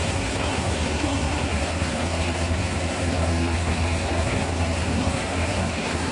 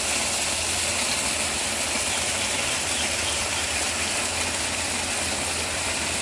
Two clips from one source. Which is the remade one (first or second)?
first